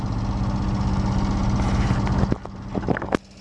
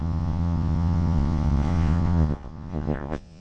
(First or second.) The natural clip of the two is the first